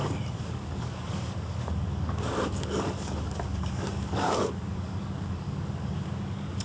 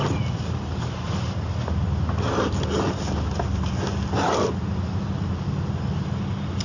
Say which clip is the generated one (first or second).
first